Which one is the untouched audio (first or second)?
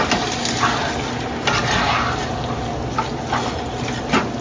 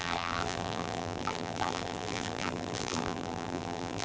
first